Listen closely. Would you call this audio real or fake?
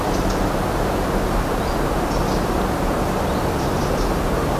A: real